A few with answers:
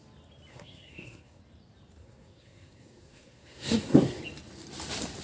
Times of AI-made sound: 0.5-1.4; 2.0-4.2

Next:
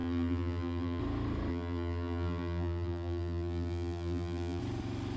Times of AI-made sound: 0.0-1.0; 1.5-4.6

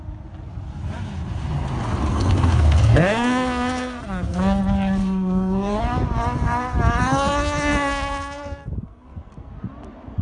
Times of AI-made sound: 2.1-4.6; 5.0-5.8; 7.0-9.5

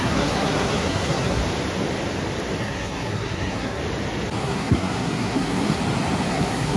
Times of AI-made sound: 0.0-1.4; 2.6-3.8; 4.4-5.8; 6.3-6.8